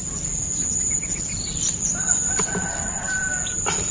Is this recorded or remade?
recorded